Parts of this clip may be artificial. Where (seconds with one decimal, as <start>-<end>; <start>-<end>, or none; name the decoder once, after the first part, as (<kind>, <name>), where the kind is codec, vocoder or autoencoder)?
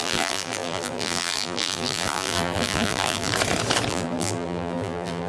0.0-3.3 (vocoder, BigVGAN v2); 3.9-5.3